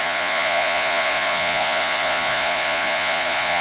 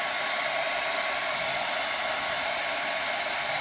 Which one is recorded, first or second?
second